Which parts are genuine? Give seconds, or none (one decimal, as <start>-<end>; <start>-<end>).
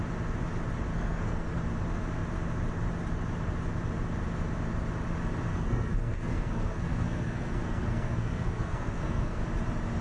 0.0-0.9; 1.6-5.5; 9.4-10.0